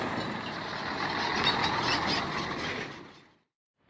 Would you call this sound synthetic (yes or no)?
no